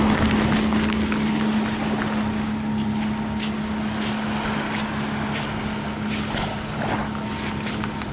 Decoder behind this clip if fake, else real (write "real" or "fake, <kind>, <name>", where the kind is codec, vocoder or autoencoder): real